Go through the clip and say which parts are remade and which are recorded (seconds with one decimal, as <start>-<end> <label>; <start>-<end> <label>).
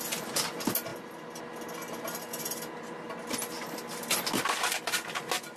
0.0-5.6 recorded